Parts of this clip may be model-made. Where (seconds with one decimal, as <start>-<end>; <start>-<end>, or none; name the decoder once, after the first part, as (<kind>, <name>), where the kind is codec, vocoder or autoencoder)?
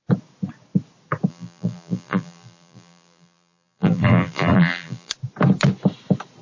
1.3-5.1 (vocoder, BigVGAN v2)